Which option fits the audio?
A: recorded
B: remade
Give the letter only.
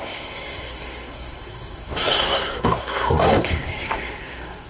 B